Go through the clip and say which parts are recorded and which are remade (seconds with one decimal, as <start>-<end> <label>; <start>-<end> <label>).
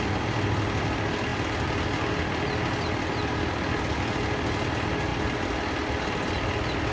0.0-6.9 recorded